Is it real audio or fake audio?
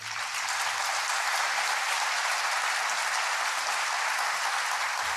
real